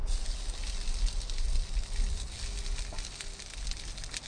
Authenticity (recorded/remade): recorded